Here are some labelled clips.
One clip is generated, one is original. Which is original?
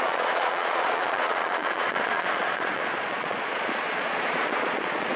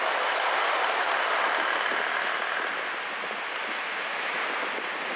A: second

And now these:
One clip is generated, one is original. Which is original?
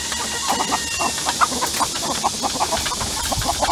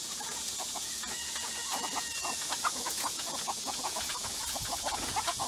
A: first